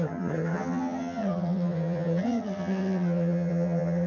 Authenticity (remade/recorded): remade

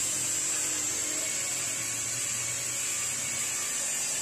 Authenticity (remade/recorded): recorded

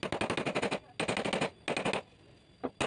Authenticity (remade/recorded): recorded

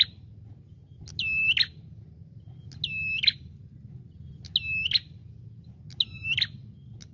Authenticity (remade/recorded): recorded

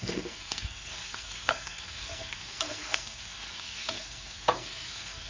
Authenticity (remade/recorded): remade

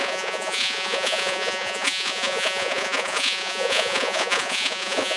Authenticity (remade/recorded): remade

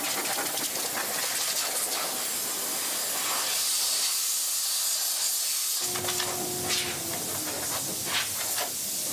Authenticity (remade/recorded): recorded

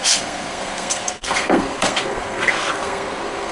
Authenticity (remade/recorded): remade